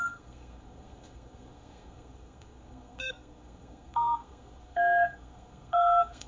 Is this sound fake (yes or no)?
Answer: yes